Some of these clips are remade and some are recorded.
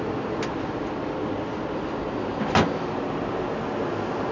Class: recorded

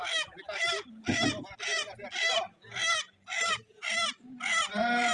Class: recorded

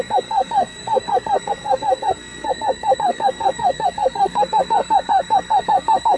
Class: remade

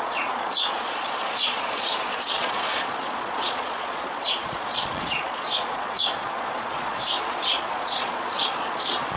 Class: remade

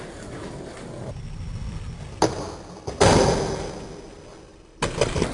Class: recorded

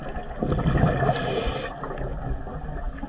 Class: recorded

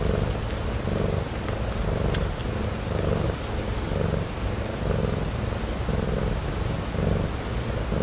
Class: recorded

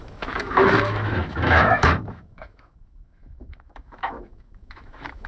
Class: remade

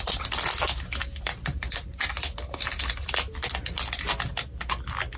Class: recorded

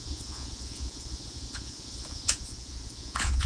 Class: remade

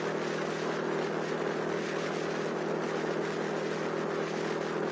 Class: recorded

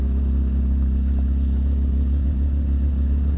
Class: recorded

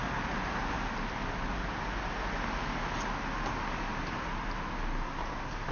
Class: recorded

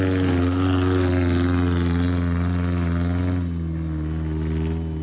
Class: recorded